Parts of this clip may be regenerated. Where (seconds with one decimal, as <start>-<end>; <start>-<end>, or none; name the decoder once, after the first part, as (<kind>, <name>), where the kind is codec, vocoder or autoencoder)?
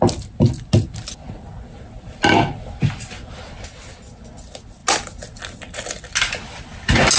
none